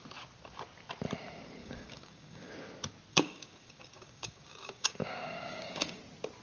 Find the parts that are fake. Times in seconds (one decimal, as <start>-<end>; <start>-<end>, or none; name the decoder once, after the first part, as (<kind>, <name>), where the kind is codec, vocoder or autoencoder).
1.6-2.5 (codec, DAC); 3.1-6.0

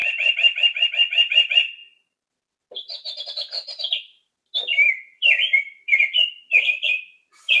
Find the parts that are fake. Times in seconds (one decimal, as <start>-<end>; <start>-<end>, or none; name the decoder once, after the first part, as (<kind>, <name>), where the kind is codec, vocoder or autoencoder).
0.0-1.8 (vocoder, BigVGAN v2); 4.9-7.6